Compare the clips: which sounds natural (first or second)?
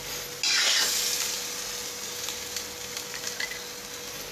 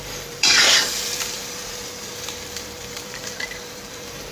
first